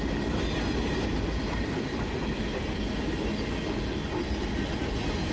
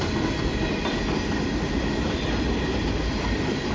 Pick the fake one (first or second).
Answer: second